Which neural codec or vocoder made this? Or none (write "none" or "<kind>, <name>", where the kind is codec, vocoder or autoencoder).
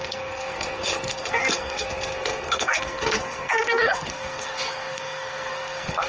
codec, SNAC